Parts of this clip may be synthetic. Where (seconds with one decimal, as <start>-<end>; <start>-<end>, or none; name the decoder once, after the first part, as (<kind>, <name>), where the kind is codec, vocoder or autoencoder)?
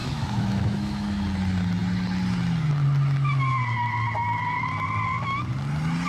0.0-1.2 (autoencoder, DAC-VAE)